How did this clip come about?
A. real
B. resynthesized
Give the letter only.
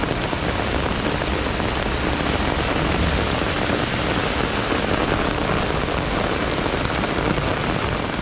A